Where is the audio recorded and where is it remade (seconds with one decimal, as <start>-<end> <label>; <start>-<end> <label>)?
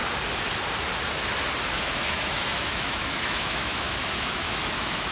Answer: 0.0-1.7 recorded; 1.7-5.1 remade